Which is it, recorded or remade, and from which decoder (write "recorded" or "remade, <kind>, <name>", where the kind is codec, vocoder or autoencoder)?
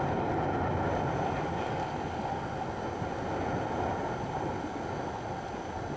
recorded